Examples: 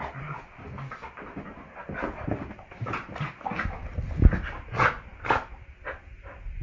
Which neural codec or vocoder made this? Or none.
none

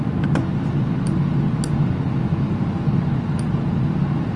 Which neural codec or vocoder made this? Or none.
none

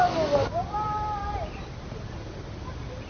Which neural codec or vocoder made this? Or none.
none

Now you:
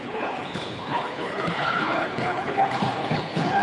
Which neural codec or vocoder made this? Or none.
codec, HILCodec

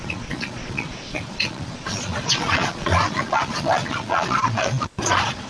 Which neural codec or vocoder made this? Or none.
vocoder, Vocos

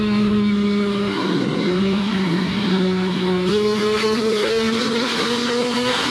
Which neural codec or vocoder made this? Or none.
codec, SNAC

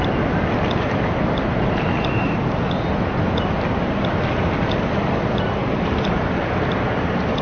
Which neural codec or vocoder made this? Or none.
none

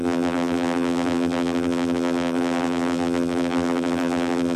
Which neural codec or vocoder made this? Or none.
vocoder, BigVGAN v2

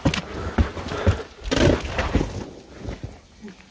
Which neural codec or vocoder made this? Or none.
none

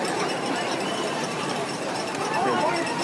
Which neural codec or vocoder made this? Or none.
vocoder, BigVGAN v2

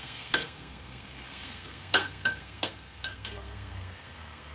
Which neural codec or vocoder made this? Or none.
codec, SNAC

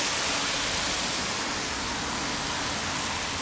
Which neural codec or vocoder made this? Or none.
none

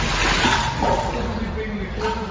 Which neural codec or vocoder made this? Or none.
none